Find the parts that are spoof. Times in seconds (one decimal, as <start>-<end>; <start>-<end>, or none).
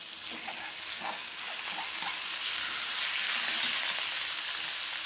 0.9-1.4